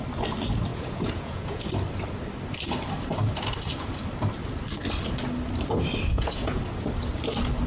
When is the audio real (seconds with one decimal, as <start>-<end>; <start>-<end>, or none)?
0.0-0.7; 1.6-6.1; 6.6-7.7

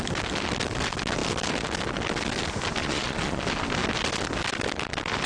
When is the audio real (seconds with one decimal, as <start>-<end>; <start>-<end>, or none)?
0.0-2.8; 3.4-5.3

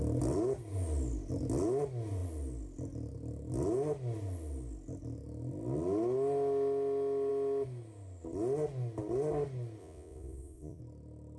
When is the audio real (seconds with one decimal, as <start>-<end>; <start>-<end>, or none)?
0.0-9.8; 10.8-11.4

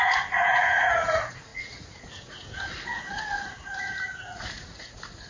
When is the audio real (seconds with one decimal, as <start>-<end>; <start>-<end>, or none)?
none